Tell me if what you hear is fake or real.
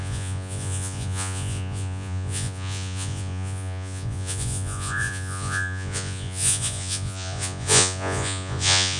fake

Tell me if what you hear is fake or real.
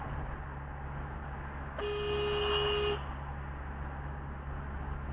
real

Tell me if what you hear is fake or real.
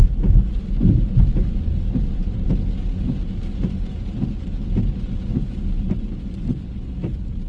real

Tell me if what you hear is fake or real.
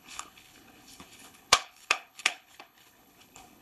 fake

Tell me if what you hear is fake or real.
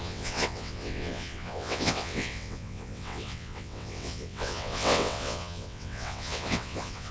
fake